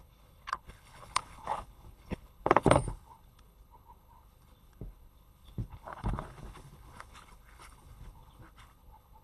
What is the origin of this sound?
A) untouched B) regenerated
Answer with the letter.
B